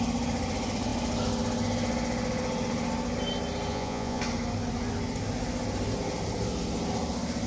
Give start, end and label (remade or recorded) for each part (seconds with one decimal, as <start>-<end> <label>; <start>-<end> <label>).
0.0-3.7 recorded; 3.7-4.2 remade; 4.2-7.5 recorded

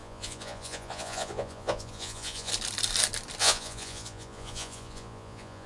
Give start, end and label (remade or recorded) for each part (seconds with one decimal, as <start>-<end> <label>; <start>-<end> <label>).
0.0-2.5 remade; 2.5-3.4 recorded; 3.4-5.7 remade

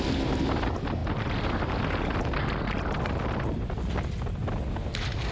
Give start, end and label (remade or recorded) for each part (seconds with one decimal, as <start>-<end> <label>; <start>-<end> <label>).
0.0-5.3 recorded

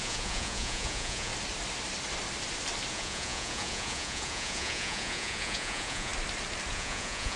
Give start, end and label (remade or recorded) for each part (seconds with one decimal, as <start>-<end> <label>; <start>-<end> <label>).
0.0-1.3 remade; 1.3-2.9 recorded; 2.9-6.1 remade; 6.1-6.7 recorded; 6.7-7.4 remade

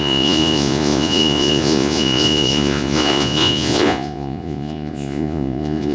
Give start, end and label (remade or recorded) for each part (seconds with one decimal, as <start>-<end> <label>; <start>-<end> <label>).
0.0-5.9 remade

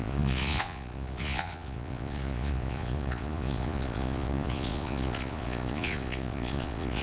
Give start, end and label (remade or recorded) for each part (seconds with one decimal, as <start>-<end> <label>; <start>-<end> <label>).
0.0-7.0 remade